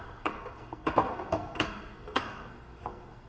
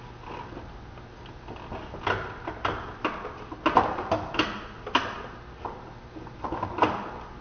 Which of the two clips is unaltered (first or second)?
second